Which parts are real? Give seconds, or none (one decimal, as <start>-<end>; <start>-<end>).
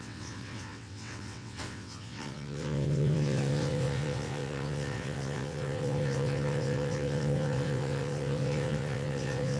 none